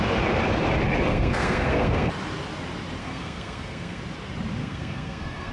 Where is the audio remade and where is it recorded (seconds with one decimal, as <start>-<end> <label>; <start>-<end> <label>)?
0.0-1.1 recorded; 1.1-2.1 remade; 2.1-3.0 recorded; 3.0-4.0 remade; 4.0-4.6 recorded; 4.6-5.5 remade